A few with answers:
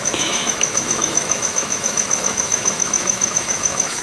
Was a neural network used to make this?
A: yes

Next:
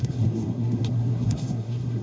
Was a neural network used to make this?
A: yes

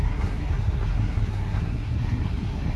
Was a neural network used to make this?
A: yes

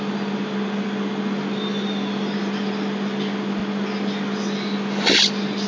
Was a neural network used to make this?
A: no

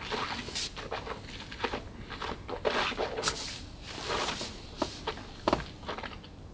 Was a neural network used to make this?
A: no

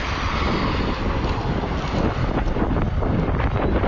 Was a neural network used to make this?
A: no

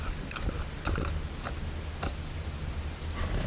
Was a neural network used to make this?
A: no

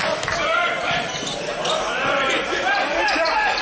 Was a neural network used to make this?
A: yes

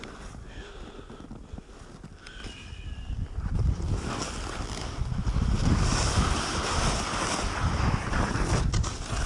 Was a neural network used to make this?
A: no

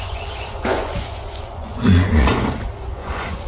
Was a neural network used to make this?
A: yes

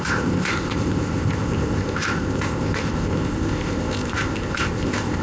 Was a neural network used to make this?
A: yes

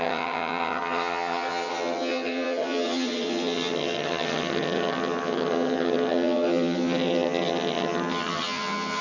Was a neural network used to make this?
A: yes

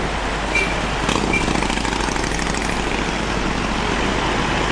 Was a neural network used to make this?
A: no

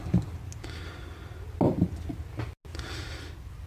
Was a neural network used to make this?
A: no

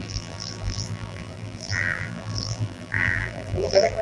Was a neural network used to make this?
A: yes